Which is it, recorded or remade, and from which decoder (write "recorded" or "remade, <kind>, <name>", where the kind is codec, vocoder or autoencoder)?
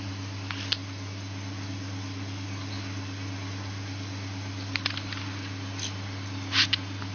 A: recorded